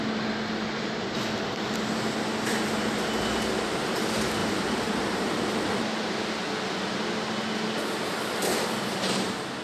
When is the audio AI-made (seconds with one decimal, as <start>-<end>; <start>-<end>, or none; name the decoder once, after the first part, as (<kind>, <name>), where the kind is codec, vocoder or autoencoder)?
4.4-5.6 (vocoder, BigVGAN v2)